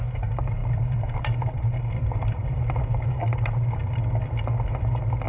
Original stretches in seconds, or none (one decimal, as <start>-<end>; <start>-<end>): 0.0-0.6; 3.8-5.3